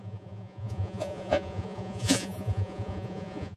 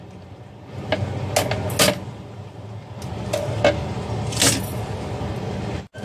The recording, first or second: second